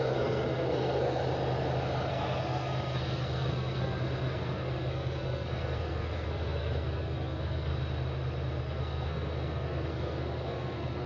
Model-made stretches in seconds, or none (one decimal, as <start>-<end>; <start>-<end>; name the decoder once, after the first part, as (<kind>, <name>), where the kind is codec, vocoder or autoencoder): 0.0-1.2 (codec, SNAC); 2.1-7.7; 8.6-11.1